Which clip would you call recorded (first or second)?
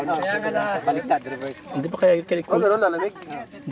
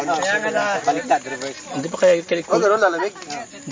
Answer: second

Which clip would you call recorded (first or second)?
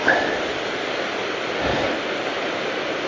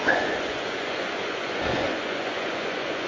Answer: first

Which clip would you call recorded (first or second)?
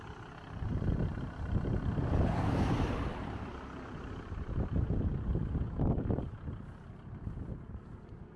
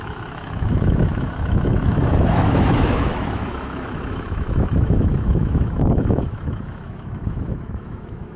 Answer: first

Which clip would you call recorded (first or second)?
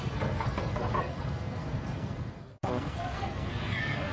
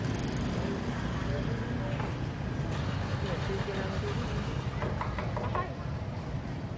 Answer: second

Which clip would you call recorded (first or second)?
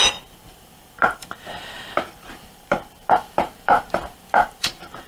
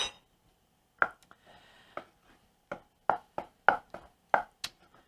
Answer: second